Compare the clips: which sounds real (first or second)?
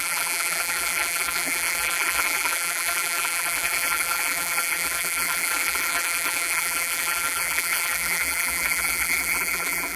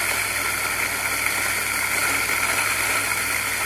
second